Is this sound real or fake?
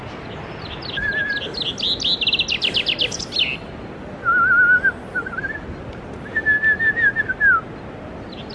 real